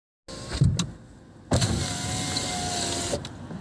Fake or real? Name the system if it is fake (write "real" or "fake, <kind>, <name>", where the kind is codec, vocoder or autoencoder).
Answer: real